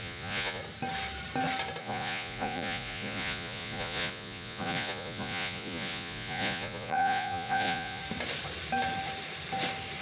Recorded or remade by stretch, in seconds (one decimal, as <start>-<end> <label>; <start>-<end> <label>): 0.0-0.6 remade; 0.6-1.8 recorded; 1.8-8.0 remade; 8.0-10.0 recorded